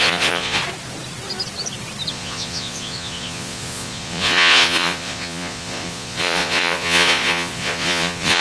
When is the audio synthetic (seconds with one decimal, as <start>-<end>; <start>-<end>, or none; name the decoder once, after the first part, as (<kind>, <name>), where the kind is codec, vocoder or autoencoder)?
0.0-0.6 (vocoder, Vocos); 2.1-8.4